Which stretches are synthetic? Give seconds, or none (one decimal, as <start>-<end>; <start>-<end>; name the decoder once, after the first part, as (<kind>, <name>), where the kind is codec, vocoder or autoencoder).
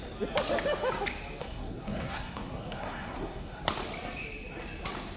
1.4-3.6 (codec, SNAC)